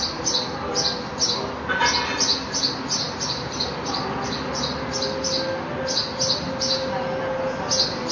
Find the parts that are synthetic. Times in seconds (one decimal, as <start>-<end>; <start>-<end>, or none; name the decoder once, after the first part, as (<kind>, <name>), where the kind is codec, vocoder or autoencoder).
none